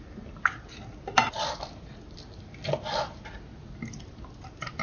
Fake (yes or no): no